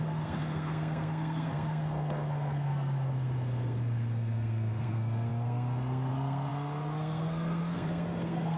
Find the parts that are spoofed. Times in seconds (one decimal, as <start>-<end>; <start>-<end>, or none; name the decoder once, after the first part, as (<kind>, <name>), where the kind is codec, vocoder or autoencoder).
0.0-8.6 (codec, SNAC)